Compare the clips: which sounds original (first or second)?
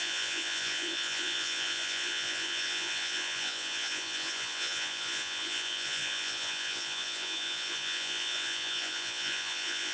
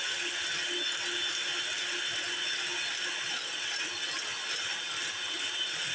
second